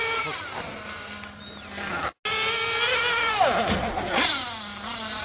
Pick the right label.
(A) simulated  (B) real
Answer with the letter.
B